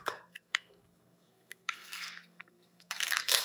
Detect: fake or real fake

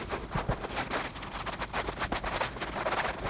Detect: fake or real real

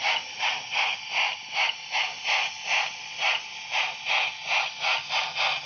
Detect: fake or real real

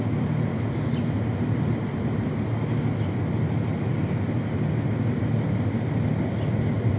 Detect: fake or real real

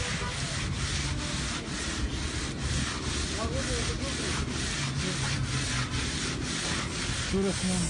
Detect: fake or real real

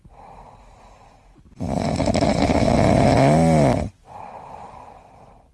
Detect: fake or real real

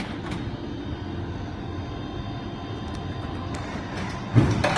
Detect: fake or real real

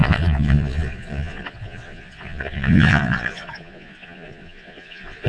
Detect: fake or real fake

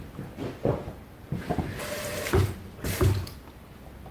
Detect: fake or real real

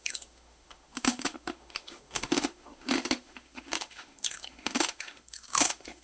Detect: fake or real fake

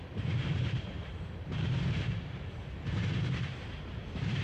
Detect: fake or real fake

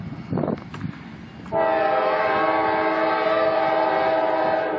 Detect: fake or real real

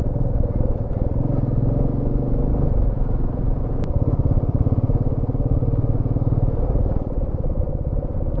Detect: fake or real real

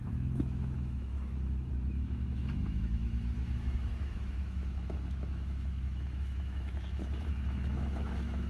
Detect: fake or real fake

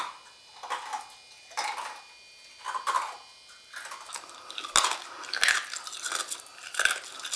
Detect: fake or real real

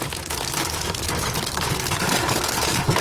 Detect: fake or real fake